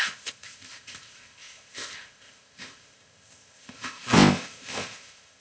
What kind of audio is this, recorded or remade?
remade